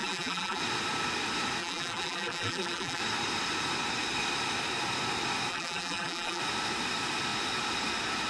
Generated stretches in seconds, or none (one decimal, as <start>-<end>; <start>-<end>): 0.0-0.6; 1.6-3.0; 5.5-6.4